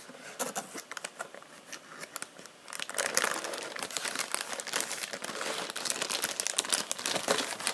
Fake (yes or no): no